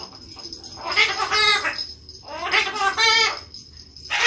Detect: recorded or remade recorded